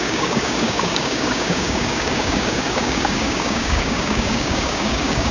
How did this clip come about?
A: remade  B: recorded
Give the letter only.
A